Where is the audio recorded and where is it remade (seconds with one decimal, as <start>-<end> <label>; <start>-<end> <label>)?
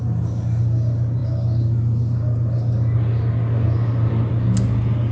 0.0-5.1 recorded